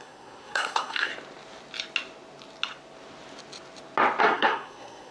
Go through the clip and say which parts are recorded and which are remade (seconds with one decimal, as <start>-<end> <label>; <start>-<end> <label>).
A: 0.0-1.1 remade; 1.1-4.2 recorded; 4.2-5.1 remade